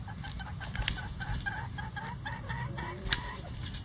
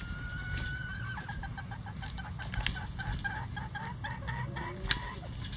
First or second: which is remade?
first